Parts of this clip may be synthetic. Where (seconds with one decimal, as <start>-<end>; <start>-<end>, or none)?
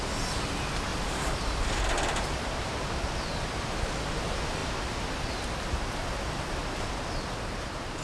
0.9-3.0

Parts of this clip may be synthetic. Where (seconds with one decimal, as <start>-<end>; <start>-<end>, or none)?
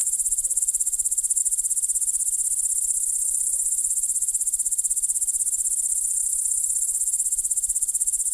none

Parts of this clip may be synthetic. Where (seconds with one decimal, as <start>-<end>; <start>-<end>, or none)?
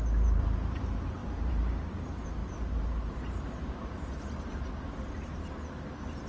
0.0-6.3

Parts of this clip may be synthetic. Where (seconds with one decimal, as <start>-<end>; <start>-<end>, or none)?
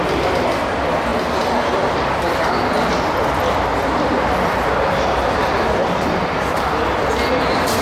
none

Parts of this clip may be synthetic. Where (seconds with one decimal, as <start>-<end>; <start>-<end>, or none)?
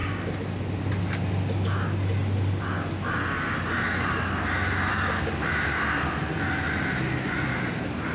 none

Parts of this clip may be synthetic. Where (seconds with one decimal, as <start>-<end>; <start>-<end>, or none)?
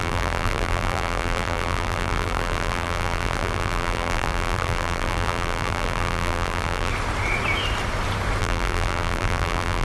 0.0-6.9; 8.4-9.8